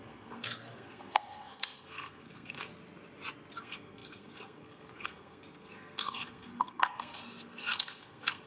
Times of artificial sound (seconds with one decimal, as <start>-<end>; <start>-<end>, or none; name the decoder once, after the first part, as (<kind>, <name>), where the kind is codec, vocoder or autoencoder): 0.0-2.7 (codec, SNAC); 3.6-8.5